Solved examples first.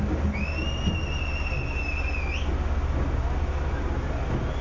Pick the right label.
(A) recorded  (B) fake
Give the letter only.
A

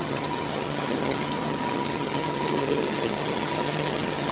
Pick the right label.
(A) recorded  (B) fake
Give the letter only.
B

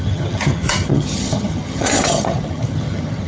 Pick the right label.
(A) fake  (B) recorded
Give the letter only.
A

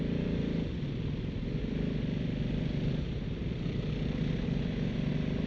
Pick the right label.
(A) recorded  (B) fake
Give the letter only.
A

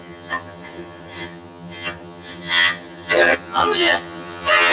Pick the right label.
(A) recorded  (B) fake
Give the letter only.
B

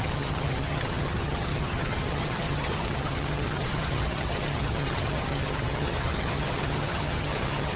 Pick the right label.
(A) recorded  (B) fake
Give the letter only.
B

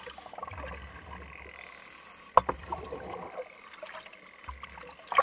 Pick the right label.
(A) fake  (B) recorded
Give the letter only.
B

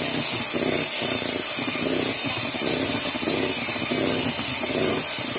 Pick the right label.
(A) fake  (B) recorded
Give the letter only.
B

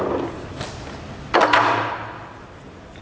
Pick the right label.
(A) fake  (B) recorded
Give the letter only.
B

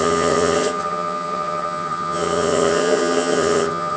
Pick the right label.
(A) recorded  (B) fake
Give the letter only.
B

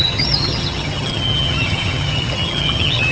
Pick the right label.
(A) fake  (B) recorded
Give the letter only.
A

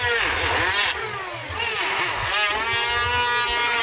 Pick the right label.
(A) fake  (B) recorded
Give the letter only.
B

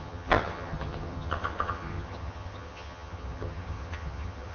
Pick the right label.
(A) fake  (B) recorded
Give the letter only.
A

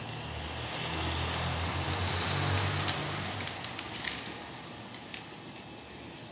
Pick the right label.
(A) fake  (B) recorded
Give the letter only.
B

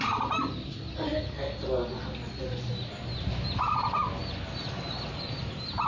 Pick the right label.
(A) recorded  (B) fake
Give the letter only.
A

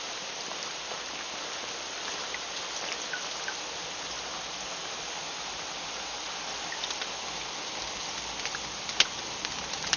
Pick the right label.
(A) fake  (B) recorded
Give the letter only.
B